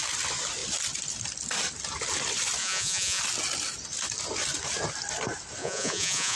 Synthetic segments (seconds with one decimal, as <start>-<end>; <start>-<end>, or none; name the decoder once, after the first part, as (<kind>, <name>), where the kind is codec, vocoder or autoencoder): 2.6-3.2 (vocoder, Vocos); 5.6-6.4